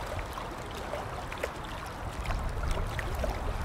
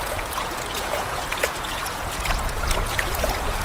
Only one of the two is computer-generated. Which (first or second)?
second